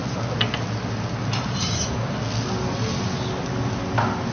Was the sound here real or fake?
real